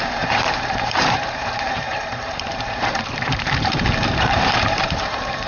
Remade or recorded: remade